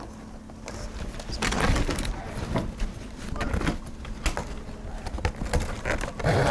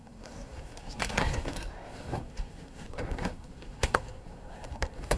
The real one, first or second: first